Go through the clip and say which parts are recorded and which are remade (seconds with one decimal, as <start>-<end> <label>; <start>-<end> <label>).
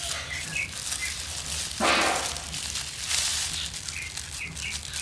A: 0.0-5.0 recorded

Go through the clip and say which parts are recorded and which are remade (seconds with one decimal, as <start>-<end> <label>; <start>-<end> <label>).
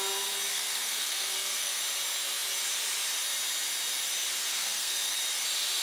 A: 0.0-0.5 recorded; 0.5-1.8 remade; 1.8-4.5 recorded; 4.5-5.2 remade; 5.2-5.8 recorded